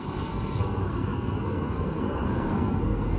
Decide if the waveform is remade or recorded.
remade